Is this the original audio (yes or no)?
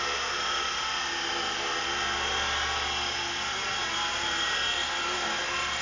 yes